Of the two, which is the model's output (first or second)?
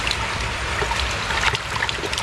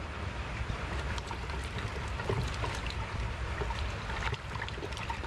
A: second